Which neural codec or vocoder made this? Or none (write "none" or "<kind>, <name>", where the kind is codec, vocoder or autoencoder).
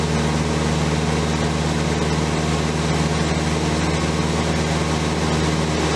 none